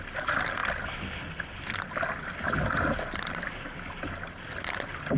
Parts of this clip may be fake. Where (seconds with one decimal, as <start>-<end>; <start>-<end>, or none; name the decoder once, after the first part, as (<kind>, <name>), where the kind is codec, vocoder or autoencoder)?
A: none